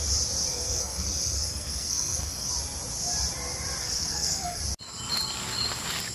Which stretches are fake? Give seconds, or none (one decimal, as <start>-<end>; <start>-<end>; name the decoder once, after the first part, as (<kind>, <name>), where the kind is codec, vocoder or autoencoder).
0.5-2.5 (codec, SNAC); 3.8-4.6